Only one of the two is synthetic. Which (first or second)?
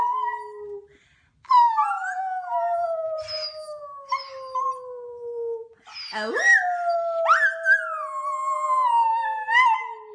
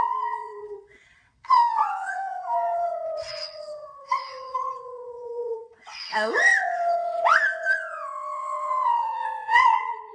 second